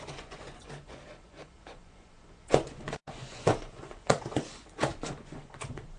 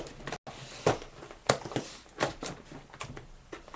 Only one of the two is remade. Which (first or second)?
first